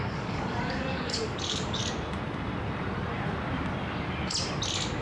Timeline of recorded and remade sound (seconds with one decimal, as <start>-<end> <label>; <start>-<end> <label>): 0.0-1.8 remade; 1.8-5.0 recorded